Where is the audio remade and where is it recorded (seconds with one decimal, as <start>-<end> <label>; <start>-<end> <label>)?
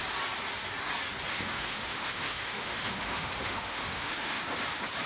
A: 0.0-1.3 recorded; 1.3-4.4 remade; 4.4-5.1 recorded